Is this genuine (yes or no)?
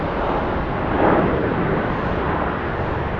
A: yes